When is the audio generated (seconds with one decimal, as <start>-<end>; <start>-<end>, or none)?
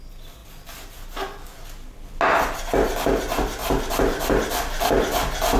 none